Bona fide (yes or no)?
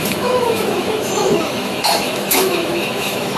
no